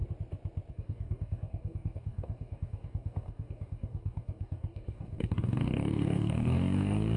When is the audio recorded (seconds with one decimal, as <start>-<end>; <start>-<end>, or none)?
0.0-0.7